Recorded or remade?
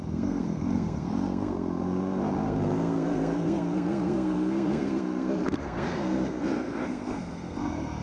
remade